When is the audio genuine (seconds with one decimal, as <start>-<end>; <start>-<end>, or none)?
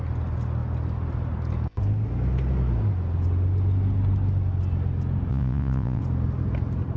0.0-5.3; 6.0-7.0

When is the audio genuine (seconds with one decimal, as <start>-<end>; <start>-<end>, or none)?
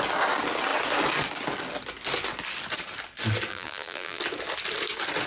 0.0-3.5; 4.2-5.3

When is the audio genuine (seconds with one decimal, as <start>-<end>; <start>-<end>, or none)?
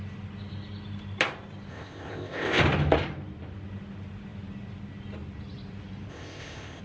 0.0-1.7; 2.6-6.1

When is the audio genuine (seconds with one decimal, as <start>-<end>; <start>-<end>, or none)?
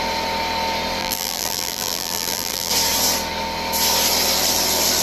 0.0-1.0; 2.7-5.0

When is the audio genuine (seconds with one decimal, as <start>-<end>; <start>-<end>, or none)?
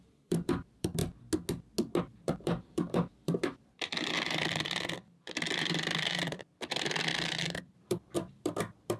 1.0-2.0; 7.1-7.6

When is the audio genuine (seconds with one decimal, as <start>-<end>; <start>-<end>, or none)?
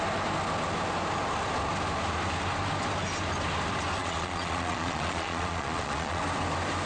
0.0-4.0; 6.2-6.9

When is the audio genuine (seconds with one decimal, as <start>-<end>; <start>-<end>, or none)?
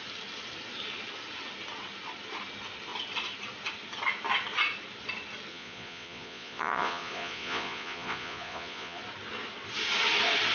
0.0-5.5; 9.0-10.5